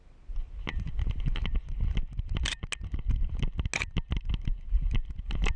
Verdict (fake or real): real